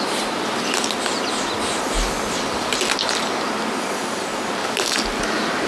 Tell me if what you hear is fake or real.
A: real